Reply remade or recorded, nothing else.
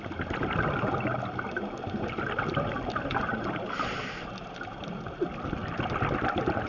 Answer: recorded